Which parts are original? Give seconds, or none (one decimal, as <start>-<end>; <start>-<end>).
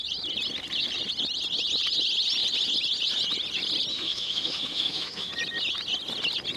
0.0-3.9; 5.3-6.6